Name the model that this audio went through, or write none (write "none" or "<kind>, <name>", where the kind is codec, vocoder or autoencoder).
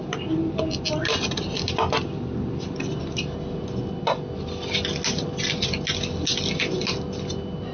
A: none